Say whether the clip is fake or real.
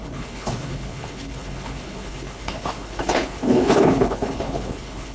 fake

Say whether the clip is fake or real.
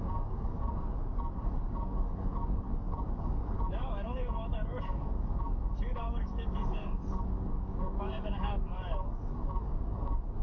fake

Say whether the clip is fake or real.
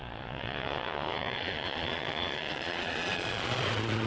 fake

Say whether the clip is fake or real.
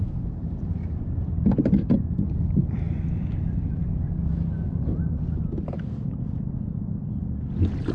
real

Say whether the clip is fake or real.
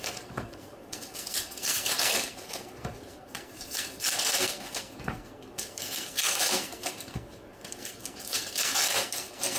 fake